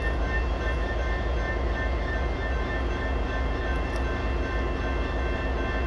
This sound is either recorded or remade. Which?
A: recorded